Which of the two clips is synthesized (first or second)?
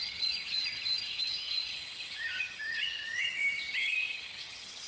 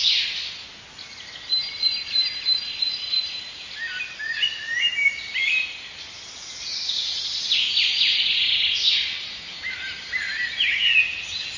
first